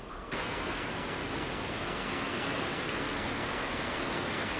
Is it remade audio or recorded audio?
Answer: remade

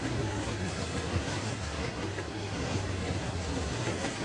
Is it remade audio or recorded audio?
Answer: remade